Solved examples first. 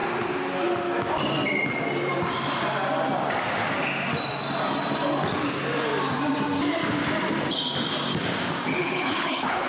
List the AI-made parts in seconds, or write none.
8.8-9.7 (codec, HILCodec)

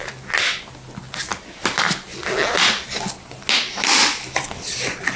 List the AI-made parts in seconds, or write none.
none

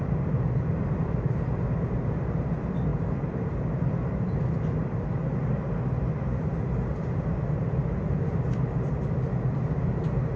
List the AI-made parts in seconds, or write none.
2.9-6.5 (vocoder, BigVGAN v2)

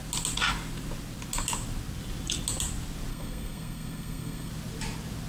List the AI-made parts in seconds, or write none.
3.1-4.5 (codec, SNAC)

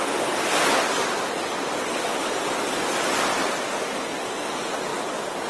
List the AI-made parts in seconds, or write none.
none